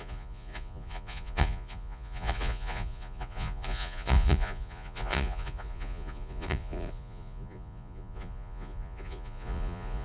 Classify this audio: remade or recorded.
remade